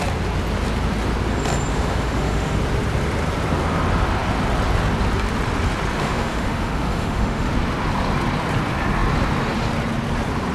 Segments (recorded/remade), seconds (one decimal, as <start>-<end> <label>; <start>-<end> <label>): 0.0-1.7 recorded; 1.7-2.6 remade; 2.6-6.0 recorded; 6.0-7.5 remade; 7.5-10.5 recorded